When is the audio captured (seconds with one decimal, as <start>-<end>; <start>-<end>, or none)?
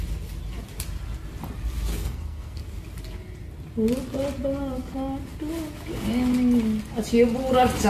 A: 0.0-1.9; 2.6-7.9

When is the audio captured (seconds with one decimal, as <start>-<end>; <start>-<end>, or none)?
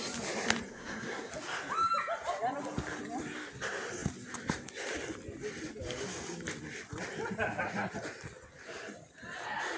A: 0.0-0.7; 1.3-9.8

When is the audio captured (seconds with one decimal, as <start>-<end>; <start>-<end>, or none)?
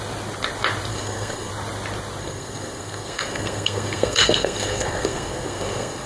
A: 0.0-0.9; 1.5-2.2